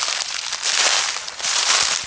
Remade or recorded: recorded